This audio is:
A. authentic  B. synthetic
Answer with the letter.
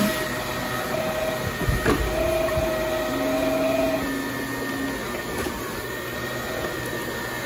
A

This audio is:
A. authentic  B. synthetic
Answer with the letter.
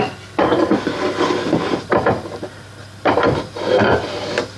A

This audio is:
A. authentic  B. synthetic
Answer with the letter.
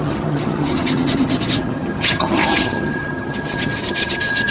B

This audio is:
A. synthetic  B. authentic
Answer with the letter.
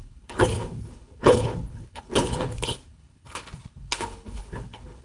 A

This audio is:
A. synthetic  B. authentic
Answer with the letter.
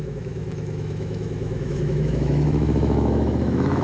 A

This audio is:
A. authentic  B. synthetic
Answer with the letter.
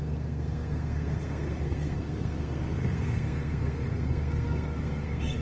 B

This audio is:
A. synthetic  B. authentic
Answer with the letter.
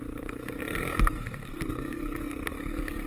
A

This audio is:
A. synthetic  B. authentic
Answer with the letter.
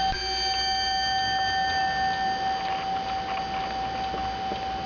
B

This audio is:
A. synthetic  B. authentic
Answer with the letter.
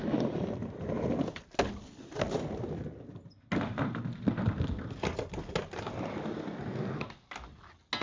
B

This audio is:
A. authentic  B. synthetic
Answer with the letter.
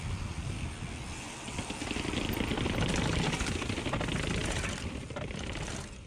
A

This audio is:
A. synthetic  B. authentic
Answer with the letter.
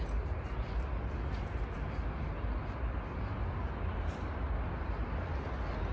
B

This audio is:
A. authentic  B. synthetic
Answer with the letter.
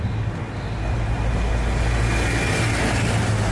A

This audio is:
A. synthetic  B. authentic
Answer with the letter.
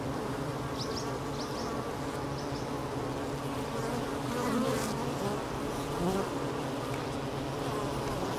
B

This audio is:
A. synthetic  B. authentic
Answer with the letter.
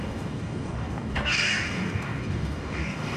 A